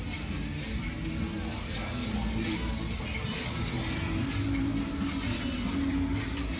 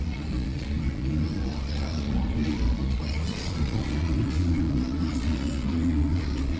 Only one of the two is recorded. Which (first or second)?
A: first